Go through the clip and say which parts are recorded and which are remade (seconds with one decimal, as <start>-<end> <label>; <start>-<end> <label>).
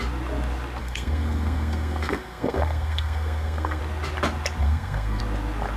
0.0-0.8 recorded; 0.8-3.8 remade; 3.8-4.6 recorded; 4.6-5.2 remade; 5.2-5.8 recorded